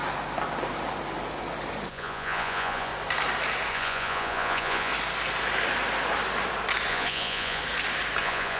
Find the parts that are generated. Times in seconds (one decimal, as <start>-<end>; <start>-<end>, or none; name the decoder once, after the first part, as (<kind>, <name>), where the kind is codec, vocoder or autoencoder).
1.9-2.9 (vocoder, Vocos); 3.7-4.9; 6.9-7.6; 8.2-8.6